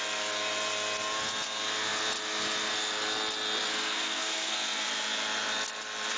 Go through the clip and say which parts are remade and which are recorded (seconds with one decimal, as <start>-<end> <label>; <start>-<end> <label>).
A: 0.0-3.7 recorded; 3.7-4.9 remade; 4.9-6.2 recorded